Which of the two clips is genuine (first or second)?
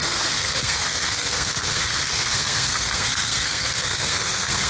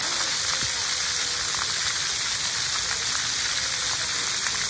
second